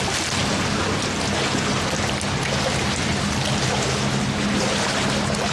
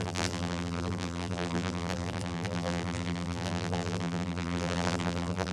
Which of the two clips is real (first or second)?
first